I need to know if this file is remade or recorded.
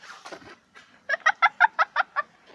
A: remade